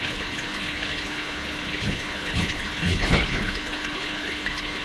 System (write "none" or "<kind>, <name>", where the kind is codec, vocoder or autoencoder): codec, HILCodec